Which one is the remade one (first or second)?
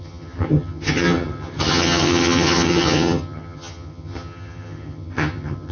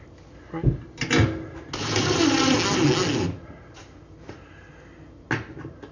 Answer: first